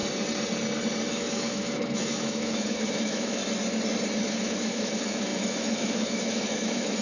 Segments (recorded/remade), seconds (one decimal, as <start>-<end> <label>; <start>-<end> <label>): 0.0-1.1 recorded; 1.1-3.4 remade; 3.4-4.2 recorded; 4.2-7.0 remade